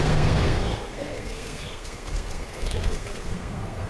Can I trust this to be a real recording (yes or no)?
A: no